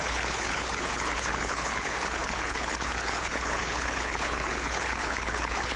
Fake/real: fake